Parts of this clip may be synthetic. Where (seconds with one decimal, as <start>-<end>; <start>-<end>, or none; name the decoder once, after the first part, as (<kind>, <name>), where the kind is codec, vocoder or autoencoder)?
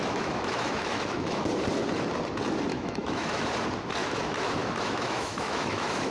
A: 0.0-1.4 (autoencoder, DAC-VAE); 2.7-3.5; 4.0-6.1